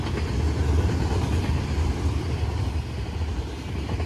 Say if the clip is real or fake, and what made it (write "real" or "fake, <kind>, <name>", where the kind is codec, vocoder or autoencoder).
real